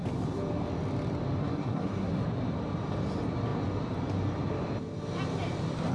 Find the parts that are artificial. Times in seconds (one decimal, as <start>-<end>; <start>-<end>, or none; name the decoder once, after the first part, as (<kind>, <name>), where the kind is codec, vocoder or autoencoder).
1.4-2.1 (codec, SNAC)